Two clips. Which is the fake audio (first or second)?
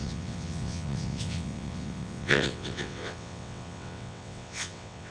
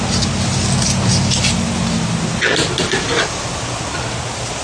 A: first